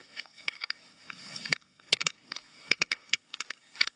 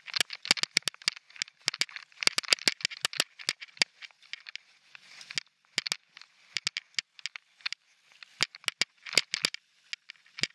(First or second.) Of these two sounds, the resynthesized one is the first